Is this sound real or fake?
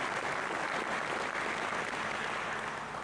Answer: real